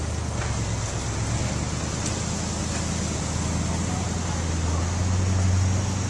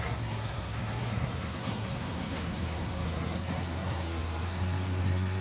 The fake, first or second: second